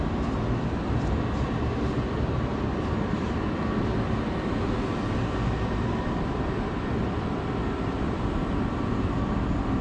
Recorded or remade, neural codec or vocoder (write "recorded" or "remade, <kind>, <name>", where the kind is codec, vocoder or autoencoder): recorded